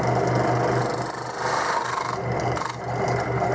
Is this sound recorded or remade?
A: recorded